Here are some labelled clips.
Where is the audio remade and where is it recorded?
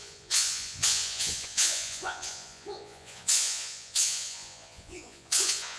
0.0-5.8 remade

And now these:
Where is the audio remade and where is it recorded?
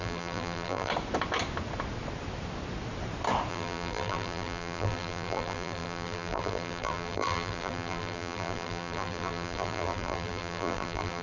0.0-0.9 remade; 0.9-3.5 recorded; 3.5-11.2 remade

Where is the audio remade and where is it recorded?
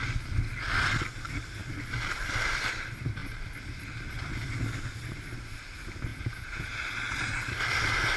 0.0-6.1 recorded; 6.1-6.7 remade; 6.7-8.2 recorded